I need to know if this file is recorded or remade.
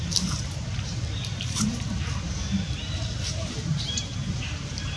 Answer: remade